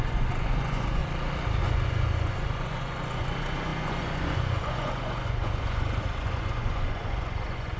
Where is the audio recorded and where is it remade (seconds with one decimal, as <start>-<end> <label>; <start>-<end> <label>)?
0.0-1.0 remade; 1.0-1.6 recorded; 1.6-7.8 remade